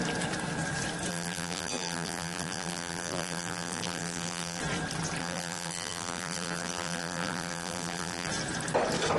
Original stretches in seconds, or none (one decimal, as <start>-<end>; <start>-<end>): 0.0-1.1; 4.6-5.2; 8.3-9.2